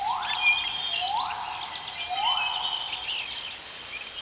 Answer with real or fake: real